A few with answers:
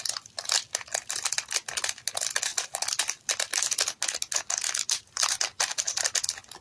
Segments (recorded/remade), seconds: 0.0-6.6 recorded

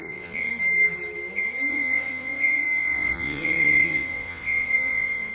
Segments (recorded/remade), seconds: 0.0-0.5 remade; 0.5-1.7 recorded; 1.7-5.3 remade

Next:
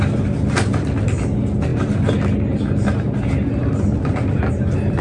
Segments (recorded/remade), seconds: 0.0-5.0 recorded

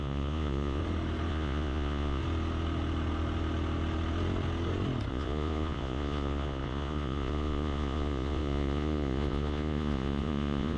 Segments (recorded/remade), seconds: 0.0-0.8 remade; 0.8-1.3 recorded; 1.3-2.2 remade; 2.2-5.1 recorded; 5.1-10.8 remade

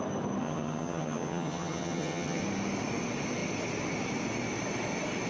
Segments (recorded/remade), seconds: 0.0-0.4 recorded; 0.4-2.4 remade; 2.4-5.3 recorded

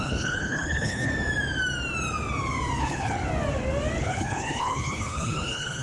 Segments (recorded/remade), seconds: 0.0-1.1 remade; 1.1-2.8 recorded; 2.8-3.2 remade; 3.2-4.0 recorded; 4.0-5.8 remade

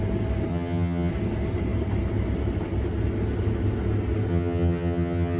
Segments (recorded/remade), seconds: 0.0-0.5 recorded; 0.5-1.1 remade; 1.1-4.3 recorded; 4.3-5.4 remade

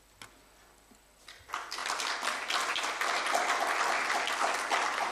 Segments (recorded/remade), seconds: 0.0-5.1 recorded